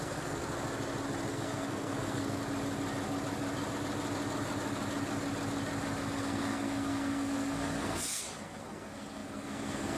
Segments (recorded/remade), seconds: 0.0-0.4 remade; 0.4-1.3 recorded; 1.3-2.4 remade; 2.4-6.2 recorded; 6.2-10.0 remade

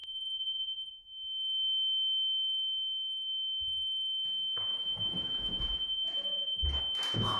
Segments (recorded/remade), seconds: 0.0-0.9 remade; 0.9-4.7 recorded; 4.7-6.8 remade; 6.8-7.4 recorded

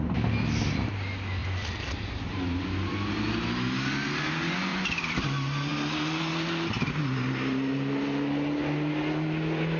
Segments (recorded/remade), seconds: 0.0-1.4 recorded; 1.4-3.1 remade; 3.1-4.7 recorded; 4.7-5.2 remade; 5.2-9.8 recorded

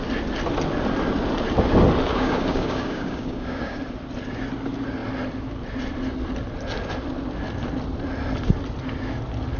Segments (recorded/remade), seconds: 0.0-2.1 recorded; 2.1-3.8 remade; 3.8-9.6 recorded

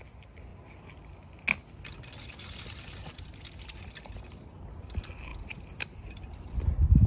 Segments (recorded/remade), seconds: 0.0-7.1 recorded

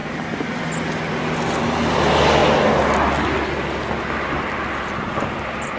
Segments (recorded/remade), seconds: 0.0-5.8 recorded

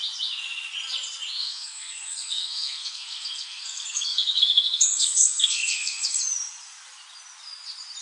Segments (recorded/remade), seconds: 0.0-1.4 recorded; 1.4-6.2 remade; 6.2-8.0 recorded